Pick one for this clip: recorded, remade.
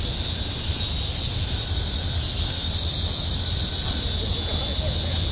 recorded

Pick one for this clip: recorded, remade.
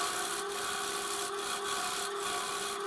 recorded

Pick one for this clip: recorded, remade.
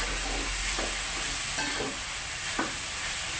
recorded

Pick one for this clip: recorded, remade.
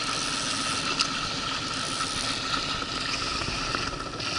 recorded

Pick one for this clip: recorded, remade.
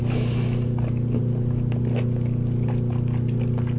recorded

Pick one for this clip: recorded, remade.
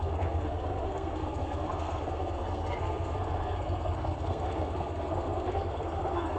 remade